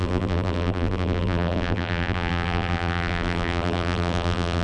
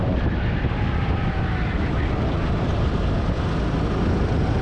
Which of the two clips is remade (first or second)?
first